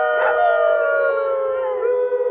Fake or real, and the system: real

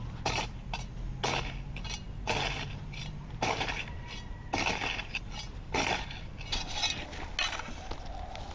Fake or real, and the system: real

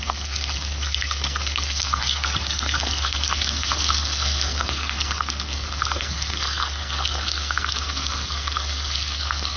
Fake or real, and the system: fake, codec, SNAC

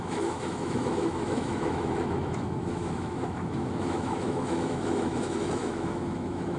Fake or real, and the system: fake, autoencoder, DAC-VAE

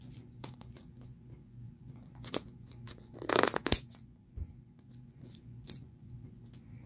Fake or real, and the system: fake, vocoder, Vocos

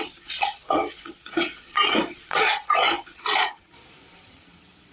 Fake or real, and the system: fake, vocoder, Vocos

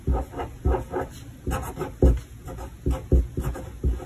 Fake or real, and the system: real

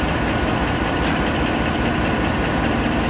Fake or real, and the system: real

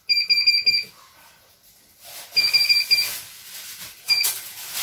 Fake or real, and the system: real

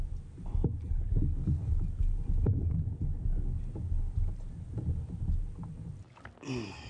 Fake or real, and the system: real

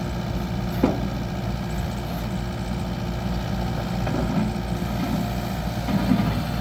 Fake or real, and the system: real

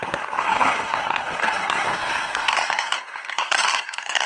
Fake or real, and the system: fake, codec, SNAC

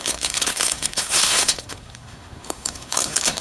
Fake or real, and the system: fake, codec, SNAC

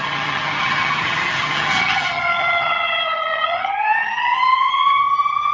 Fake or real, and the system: fake, vocoder, HiFi-GAN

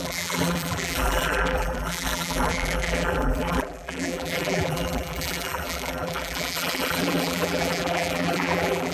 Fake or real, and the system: fake, vocoder, BigVGAN v2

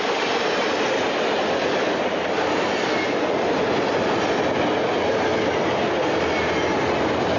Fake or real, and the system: real